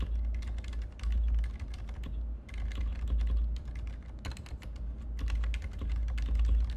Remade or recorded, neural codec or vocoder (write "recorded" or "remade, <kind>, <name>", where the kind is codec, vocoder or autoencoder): recorded